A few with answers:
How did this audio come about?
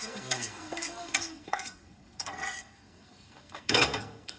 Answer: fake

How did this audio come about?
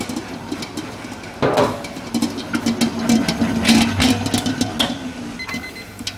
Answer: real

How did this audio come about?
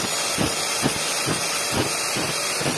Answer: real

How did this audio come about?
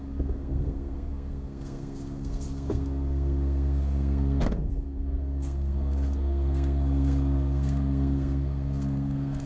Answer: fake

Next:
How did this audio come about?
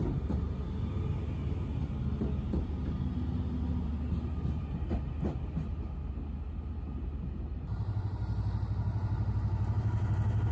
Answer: real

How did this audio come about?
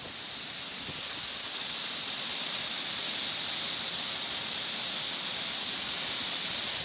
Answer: real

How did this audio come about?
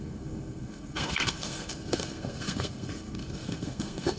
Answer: fake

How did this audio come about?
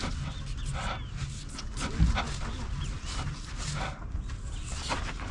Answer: real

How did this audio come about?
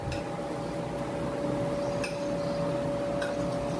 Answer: real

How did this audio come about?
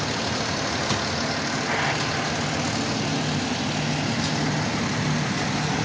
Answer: real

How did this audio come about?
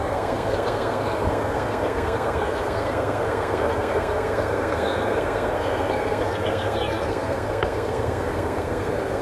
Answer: fake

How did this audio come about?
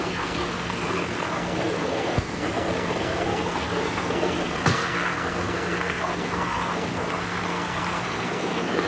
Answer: fake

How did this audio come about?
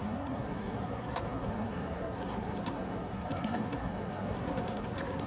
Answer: fake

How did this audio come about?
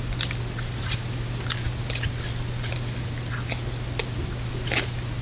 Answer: real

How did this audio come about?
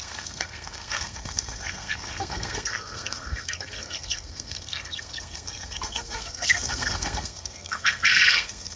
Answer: fake